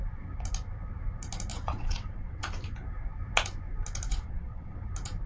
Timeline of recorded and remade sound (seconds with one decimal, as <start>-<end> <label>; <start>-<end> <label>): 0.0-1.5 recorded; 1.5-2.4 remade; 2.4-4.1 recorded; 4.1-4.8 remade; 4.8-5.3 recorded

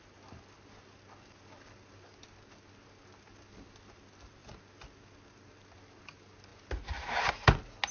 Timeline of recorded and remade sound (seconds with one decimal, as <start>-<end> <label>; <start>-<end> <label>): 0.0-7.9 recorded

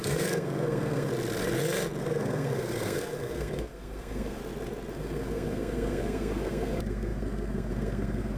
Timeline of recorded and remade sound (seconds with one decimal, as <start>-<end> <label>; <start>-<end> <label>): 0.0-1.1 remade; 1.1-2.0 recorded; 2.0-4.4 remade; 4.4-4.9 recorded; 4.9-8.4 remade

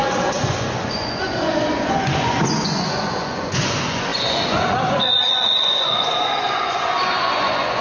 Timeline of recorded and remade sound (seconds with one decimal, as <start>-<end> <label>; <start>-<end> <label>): 0.0-7.8 remade

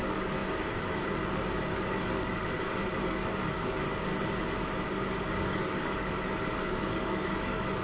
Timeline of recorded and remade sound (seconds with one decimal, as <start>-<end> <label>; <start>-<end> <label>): 0.0-4.1 remade; 4.1-4.9 recorded; 4.9-7.8 remade

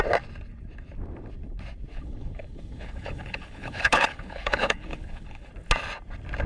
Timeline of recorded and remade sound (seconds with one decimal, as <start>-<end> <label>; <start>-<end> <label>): 0.0-1.9 recorded; 1.9-5.5 remade; 5.5-6.5 recorded

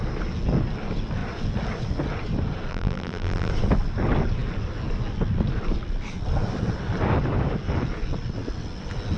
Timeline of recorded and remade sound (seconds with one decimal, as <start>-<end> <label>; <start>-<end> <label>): 0.0-2.7 recorded; 2.7-3.5 remade; 3.5-9.2 recorded

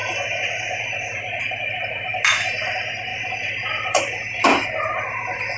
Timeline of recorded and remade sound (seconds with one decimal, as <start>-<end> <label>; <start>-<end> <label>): 0.0-1.4 remade; 1.4-3.1 recorded; 3.1-4.0 remade; 4.0-5.6 recorded